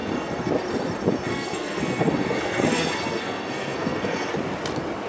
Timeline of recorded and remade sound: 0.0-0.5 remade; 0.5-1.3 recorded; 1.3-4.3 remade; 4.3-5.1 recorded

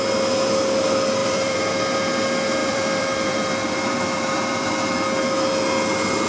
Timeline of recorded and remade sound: 0.0-1.2 recorded; 1.2-1.7 remade; 1.7-2.6 recorded; 2.6-4.7 remade; 4.7-6.3 recorded